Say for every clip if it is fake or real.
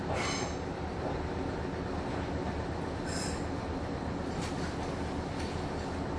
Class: real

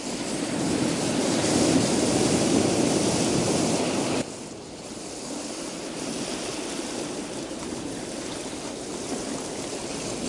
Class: real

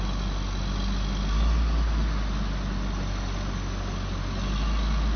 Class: real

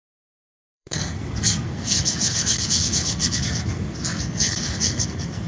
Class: fake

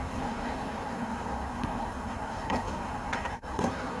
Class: fake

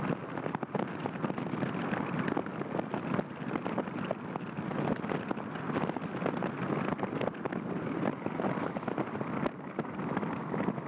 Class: real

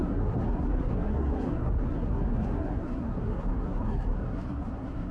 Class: fake